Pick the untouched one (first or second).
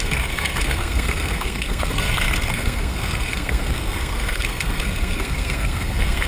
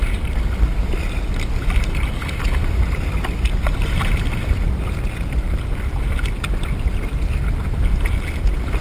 second